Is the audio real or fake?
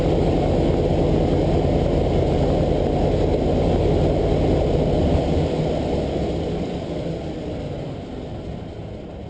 real